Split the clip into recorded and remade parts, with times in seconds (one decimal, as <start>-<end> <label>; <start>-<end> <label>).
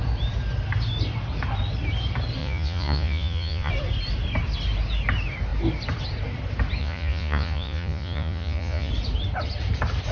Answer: 0.0-2.4 recorded; 2.4-3.7 remade; 3.7-6.8 recorded; 6.8-8.9 remade; 8.9-10.1 recorded